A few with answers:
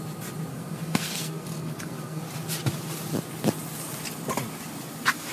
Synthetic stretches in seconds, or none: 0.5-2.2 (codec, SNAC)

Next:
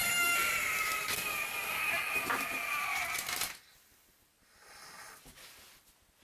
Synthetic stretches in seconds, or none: none

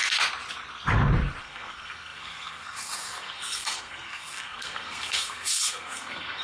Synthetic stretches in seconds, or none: 1.4-6.4 (codec, SNAC)

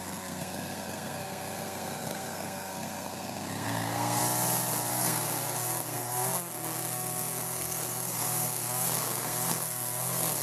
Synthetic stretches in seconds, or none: 0.0-4.2 (codec, SNAC); 4.9-10.4